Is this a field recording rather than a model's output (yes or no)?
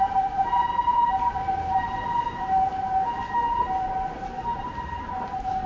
yes